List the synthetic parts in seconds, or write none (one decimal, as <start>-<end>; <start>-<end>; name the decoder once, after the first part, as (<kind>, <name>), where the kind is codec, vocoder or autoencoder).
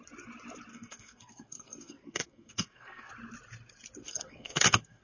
0.7-3.1 (codec, SNAC); 4.0-5.0